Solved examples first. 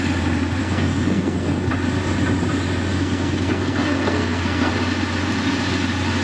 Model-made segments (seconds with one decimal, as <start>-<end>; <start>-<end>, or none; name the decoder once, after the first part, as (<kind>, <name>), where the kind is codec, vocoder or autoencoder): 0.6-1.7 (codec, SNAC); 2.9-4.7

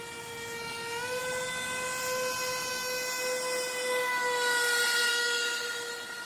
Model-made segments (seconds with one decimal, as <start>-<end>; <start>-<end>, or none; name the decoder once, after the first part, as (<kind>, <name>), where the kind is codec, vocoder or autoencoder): 5.1-5.6 (autoencoder, DAC-VAE)

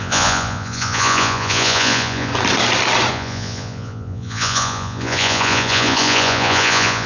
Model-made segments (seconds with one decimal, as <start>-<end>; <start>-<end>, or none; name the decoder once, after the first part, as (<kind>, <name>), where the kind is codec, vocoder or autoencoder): 0.0-2.3 (vocoder, Vocos); 3.1-7.1

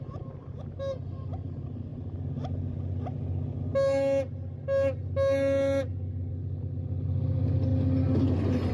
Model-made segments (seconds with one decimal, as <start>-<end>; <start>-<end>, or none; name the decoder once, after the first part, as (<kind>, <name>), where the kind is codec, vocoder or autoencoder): none

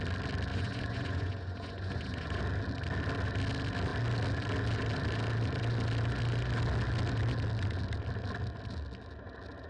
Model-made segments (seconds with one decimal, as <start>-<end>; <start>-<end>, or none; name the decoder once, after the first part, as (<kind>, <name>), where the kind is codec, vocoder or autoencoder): 0.5-2.4 (vocoder, Vocos)